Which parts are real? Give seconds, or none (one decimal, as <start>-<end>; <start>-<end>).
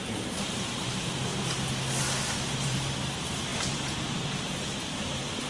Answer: 1.3-2.3